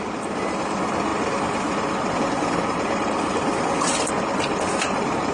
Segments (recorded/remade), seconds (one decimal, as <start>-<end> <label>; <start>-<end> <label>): 0.0-5.3 recorded